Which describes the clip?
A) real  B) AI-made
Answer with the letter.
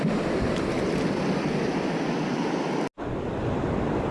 A